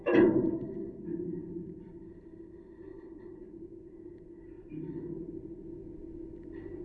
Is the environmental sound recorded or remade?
remade